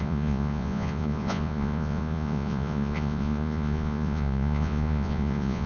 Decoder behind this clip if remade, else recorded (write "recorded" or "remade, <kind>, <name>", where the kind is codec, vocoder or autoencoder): remade, vocoder, Vocos